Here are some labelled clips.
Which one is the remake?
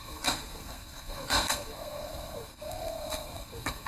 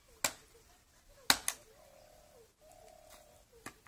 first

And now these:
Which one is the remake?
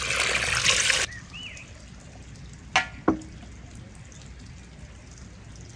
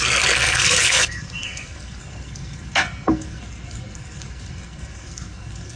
second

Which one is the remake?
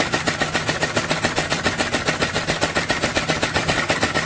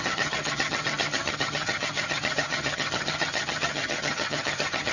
second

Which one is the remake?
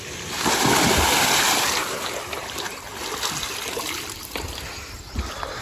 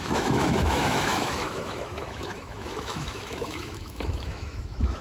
second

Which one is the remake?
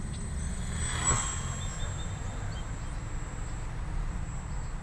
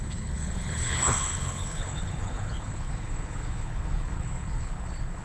second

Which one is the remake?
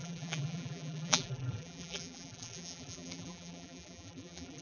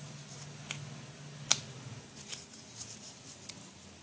first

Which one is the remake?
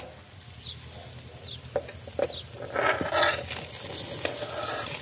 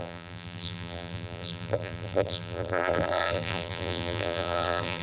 second